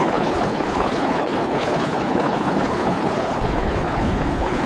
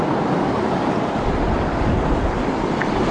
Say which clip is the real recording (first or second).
second